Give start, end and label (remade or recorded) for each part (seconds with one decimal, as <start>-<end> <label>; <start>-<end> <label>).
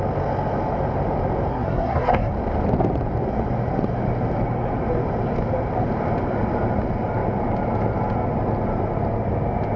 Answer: 0.0-1.5 recorded; 1.5-2.3 remade; 2.3-9.8 recorded